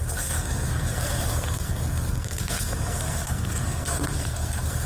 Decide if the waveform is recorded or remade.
remade